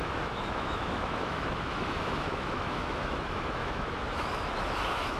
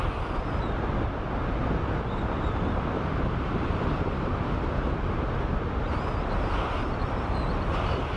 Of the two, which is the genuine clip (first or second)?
second